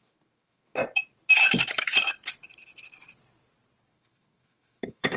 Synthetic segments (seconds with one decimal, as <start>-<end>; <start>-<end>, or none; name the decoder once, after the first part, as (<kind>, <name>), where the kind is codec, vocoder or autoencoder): 0.0-0.8 (autoencoder, DAC-VAE); 3.9-5.2